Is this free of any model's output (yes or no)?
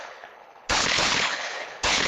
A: no